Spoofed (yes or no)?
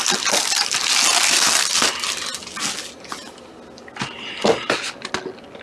no